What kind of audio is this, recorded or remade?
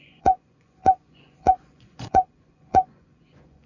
remade